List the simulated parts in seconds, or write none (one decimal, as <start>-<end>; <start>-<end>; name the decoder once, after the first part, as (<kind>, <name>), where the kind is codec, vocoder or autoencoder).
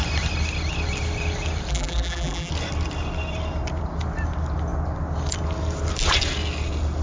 1.7-2.5 (vocoder, BigVGAN v2)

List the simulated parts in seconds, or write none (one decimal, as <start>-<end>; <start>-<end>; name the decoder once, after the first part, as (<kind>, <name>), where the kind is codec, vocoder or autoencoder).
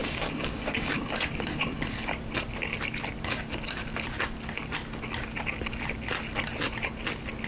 0.0-1.0 (codec, DAC)